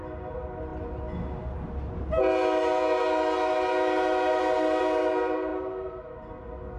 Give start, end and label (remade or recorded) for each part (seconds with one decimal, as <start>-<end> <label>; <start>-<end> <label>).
0.0-6.8 recorded